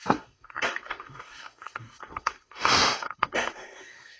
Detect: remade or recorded remade